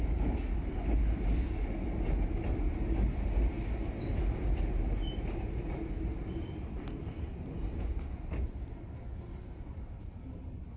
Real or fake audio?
real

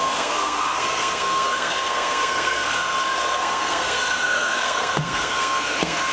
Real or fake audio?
fake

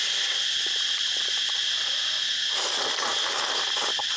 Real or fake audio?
real